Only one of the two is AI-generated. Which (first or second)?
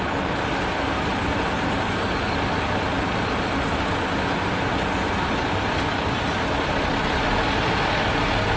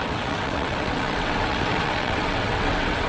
second